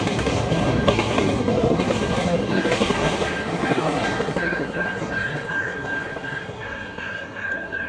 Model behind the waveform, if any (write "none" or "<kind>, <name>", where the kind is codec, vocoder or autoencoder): codec, SNAC